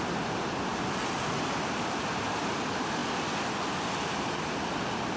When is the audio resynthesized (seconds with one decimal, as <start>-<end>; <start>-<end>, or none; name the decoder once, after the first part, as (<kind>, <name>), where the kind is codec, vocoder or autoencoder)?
none